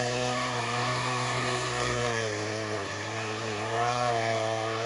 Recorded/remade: remade